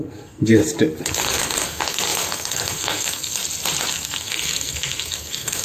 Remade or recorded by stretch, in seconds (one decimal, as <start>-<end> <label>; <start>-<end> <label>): 0.0-0.6 remade; 0.6-1.1 recorded; 1.1-3.4 remade; 3.4-3.9 recorded; 3.9-5.6 remade